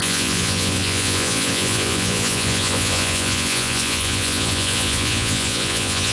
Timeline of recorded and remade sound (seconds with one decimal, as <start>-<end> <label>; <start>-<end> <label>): 0.0-6.1 remade